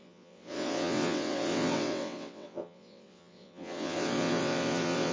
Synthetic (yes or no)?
yes